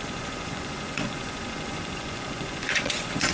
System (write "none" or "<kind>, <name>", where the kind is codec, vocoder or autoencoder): vocoder, Vocos